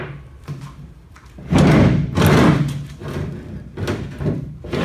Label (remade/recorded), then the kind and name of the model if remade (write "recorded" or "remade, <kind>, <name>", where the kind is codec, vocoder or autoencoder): recorded